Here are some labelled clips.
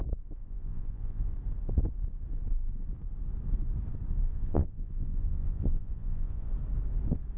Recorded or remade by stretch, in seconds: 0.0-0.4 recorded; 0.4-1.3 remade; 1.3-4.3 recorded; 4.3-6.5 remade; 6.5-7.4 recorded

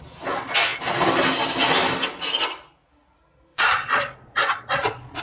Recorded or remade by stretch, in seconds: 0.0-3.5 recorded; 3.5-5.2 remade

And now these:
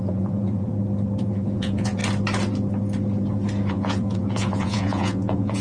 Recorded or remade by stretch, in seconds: 0.0-0.7 remade; 0.7-1.2 recorded; 1.2-2.0 remade; 2.0-3.7 recorded; 3.7-5.6 remade

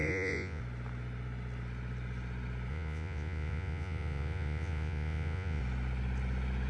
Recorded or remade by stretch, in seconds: 0.0-0.6 remade; 0.6-2.7 recorded; 2.7-5.6 remade; 5.6-6.7 recorded